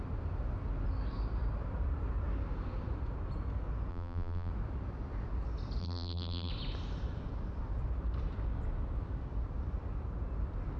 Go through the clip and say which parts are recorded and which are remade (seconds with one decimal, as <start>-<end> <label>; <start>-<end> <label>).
0.0-3.9 recorded; 3.9-4.5 remade; 4.5-5.8 recorded; 5.8-6.5 remade; 6.5-10.8 recorded

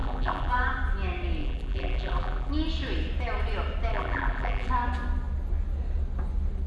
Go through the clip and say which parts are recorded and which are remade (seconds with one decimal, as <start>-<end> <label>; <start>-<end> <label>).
0.0-0.5 remade; 0.5-1.4 recorded; 1.4-2.5 remade; 2.5-3.9 recorded; 3.9-4.7 remade; 4.7-6.7 recorded